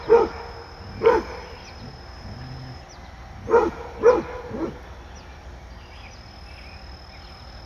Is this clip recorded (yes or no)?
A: yes